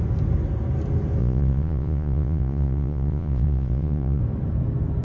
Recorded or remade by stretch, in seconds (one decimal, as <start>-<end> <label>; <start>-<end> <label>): 0.0-1.2 recorded; 1.2-4.2 remade; 4.2-5.0 recorded